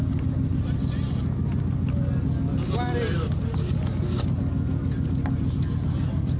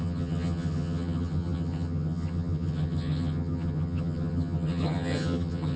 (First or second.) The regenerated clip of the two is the second